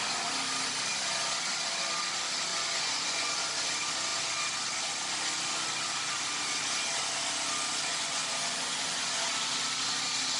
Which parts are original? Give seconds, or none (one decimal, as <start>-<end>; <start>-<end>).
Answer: 0.0-2.5; 3.4-7.9; 9.2-10.4